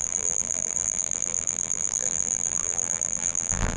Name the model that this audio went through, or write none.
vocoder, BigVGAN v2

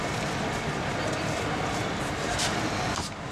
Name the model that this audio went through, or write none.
vocoder, BigVGAN v2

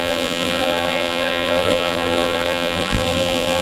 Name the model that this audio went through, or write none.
vocoder, BigVGAN v2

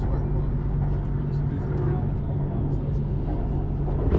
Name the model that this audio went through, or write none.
none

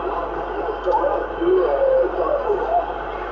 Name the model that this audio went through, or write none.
none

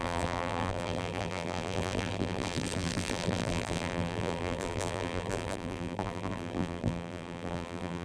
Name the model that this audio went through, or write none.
vocoder, BigVGAN v2